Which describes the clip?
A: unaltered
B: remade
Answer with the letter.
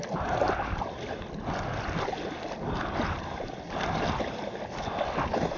A